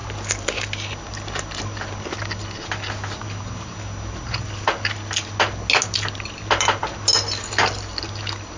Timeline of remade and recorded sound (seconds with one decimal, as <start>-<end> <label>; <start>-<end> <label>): 0.0-8.6 recorded